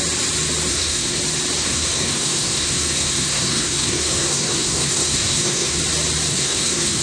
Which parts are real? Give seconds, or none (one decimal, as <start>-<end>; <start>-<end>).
0.0-0.7; 1.2-1.6; 5.8-6.3

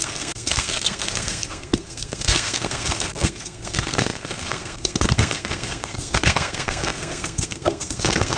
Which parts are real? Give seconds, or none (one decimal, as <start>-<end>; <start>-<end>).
none

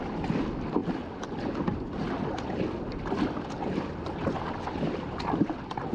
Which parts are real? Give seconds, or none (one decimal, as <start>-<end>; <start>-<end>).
0.0-5.9

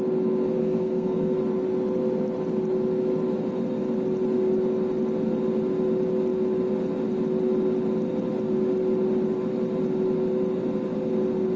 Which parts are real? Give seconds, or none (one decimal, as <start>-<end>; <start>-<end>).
0.0-0.6; 1.4-11.6

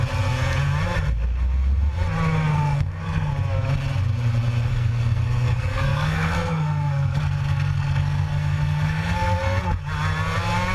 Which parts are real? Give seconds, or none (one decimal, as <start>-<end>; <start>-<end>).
0.0-2.5; 3.3-4.7; 9.6-10.7

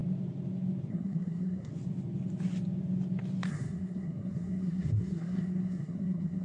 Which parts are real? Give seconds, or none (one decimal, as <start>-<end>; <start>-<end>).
0.0-0.9; 1.7-3.5

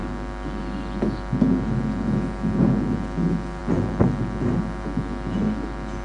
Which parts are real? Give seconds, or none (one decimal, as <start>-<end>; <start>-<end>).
0.0-6.0

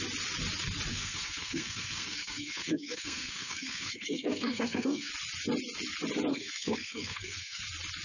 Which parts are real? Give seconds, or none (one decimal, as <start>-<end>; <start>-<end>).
0.0-0.9; 5.1-6.3; 7.6-8.0